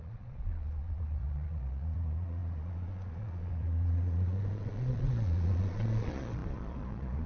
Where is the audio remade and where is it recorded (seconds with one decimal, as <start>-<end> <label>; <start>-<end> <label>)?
0.0-7.3 remade